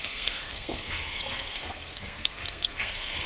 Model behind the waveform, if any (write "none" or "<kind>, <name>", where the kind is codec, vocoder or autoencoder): codec, SNAC